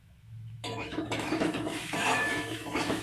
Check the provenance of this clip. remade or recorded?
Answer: remade